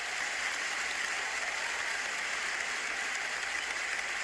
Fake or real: real